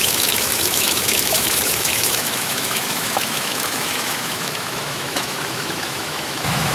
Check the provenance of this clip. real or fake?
fake